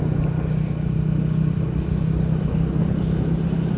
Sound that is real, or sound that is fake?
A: real